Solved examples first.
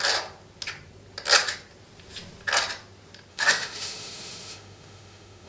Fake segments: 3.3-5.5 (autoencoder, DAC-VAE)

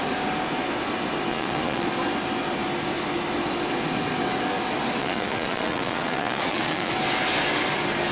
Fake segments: 1.3-1.9 (vocoder, Vocos); 5.0-6.9

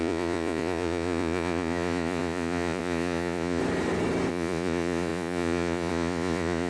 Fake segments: 0.0-3.6 (vocoder, Vocos); 4.3-6.7

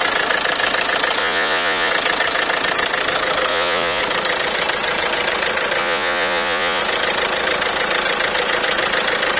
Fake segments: 1.2-1.9 (vocoder, Vocos); 3.5-4.0; 5.8-6.8

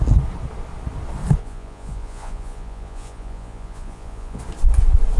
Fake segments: 1.4-4.4 (vocoder, Vocos)

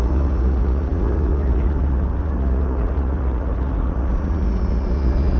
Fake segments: 0.0-5.4 (vocoder, Vocos)